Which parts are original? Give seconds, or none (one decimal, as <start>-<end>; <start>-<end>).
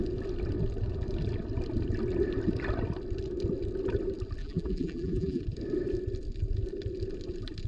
0.0-4.4; 5.4-7.7